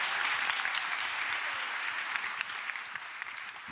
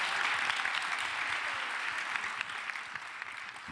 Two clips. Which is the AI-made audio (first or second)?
first